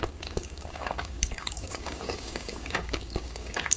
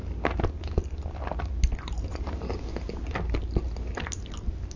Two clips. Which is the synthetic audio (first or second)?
first